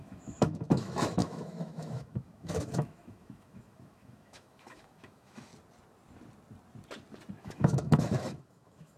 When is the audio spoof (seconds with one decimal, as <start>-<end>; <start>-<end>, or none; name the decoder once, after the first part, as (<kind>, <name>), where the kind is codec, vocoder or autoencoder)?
0.0-5.5 (autoencoder, DAC-VAE); 7.4-9.0